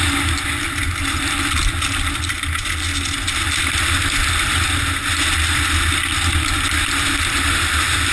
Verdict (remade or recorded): recorded